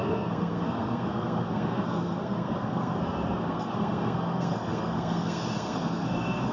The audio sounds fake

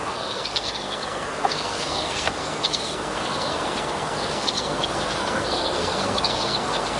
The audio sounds fake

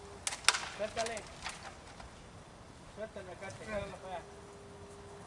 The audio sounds real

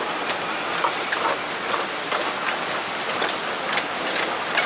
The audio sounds real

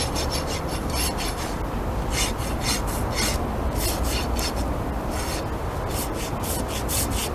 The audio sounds real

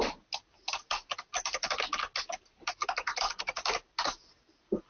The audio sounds real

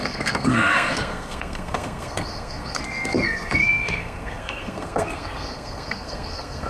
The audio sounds fake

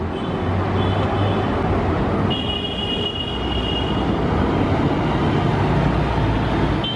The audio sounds real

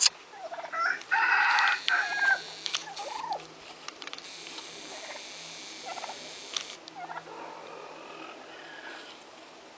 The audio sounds real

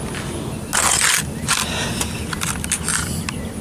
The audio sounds real